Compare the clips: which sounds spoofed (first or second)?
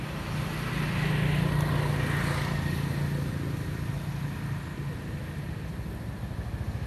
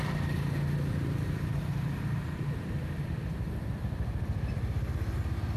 second